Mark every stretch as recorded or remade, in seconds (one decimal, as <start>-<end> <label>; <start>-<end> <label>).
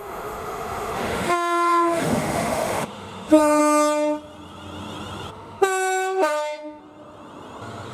0.0-3.6 remade; 3.6-5.3 recorded; 5.3-6.8 remade; 6.8-7.9 recorded